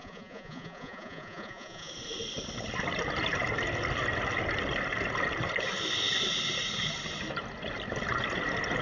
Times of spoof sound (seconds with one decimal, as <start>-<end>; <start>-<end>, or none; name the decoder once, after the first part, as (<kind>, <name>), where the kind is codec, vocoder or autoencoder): 0.0-1.9 (vocoder, Vocos)